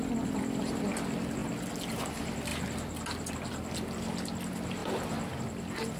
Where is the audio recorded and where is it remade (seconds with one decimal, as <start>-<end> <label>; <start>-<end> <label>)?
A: 0.0-6.0 recorded